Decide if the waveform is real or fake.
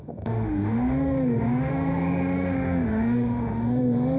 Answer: fake